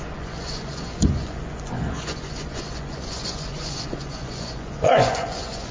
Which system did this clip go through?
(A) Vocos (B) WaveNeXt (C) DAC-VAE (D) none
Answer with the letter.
A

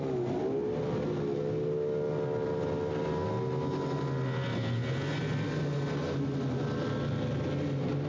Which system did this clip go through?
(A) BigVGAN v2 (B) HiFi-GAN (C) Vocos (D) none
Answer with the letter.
D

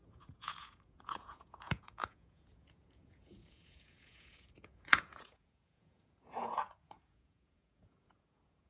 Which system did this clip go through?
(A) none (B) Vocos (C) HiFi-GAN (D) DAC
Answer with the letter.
B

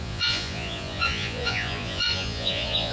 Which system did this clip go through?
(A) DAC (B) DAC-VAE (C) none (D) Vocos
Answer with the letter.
D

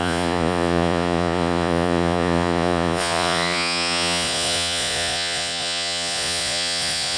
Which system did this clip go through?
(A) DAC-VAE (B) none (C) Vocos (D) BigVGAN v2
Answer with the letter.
C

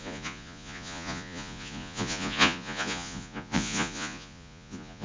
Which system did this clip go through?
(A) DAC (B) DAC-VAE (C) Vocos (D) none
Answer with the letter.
C